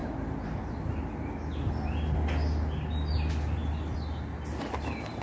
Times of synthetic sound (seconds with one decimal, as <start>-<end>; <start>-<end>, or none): none